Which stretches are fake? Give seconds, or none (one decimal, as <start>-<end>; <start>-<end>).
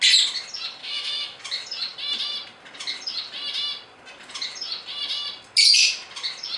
0.8-1.4